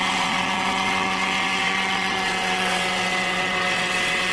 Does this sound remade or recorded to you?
remade